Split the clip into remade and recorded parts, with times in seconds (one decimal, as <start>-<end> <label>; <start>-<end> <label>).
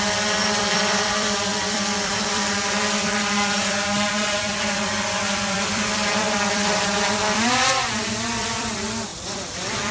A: 0.0-9.9 remade